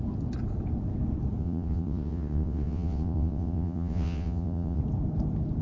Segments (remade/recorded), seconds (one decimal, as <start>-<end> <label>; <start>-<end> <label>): 0.0-1.4 recorded; 1.4-4.8 remade; 4.8-5.6 recorded